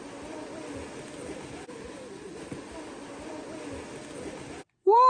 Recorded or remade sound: recorded